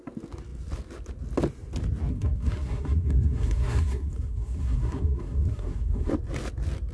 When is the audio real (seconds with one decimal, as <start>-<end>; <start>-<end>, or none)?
0.0-2.1; 6.1-6.9